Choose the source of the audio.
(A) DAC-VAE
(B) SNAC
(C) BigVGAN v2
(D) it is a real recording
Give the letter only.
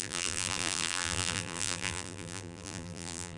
C